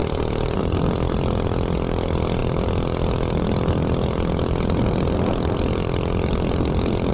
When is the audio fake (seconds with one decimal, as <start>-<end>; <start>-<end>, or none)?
0.6-7.1